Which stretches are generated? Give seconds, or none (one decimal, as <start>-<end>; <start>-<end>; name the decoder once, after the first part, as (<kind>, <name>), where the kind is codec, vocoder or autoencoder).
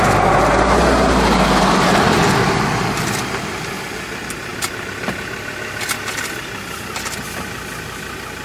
4.5-5.5 (vocoder, BigVGAN v2)